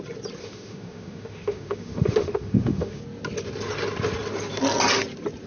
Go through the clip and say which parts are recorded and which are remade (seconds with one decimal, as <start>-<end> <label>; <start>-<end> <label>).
0.0-0.4 recorded; 0.4-3.0 remade; 3.0-5.5 recorded